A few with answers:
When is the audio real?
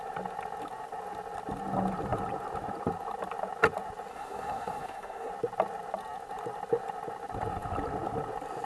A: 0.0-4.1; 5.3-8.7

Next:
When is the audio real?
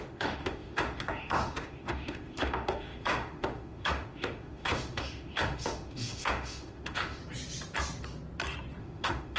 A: 7.2-8.8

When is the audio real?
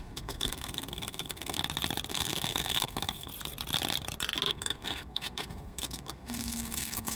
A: 1.6-2.1; 3.3-4.5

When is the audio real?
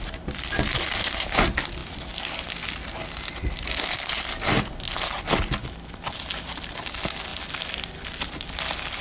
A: 0.0-9.0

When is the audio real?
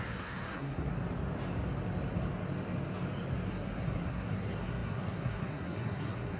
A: 0.9-3.5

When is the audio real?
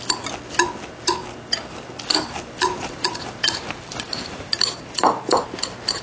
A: 0.0-2.1; 5.4-6.0